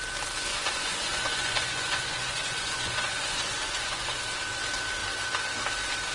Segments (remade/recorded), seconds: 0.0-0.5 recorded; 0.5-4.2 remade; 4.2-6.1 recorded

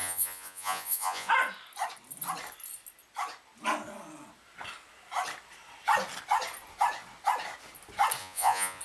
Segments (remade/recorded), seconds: 0.0-1.3 remade; 1.3-8.2 recorded; 8.2-8.8 remade

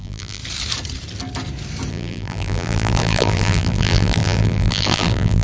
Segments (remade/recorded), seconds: 0.0-0.4 remade; 0.4-1.9 recorded; 1.9-5.4 remade

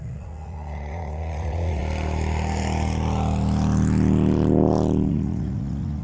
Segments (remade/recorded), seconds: 0.0-1.8 remade; 1.8-5.1 recorded; 5.1-6.0 remade

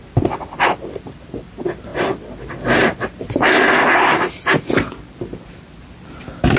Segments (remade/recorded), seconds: 0.0-6.6 recorded

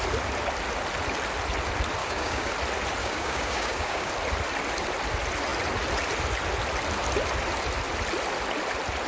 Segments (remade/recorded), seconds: 0.0-2.0 recorded; 2.0-2.5 remade; 2.5-3.0 recorded; 3.0-4.1 remade; 4.1-9.1 recorded

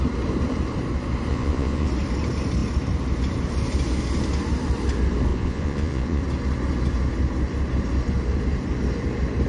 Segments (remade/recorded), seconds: 0.0-1.3 recorded; 1.3-1.9 remade; 1.9-5.3 recorded; 5.3-6.2 remade; 6.2-9.5 recorded

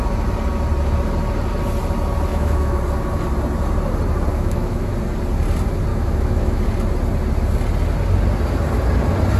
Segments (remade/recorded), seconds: 0.0-2.3 recorded; 2.3-2.8 remade; 2.8-4.3 recorded; 4.3-4.9 remade; 4.9-5.9 recorded; 5.9-6.6 remade; 6.6-9.4 recorded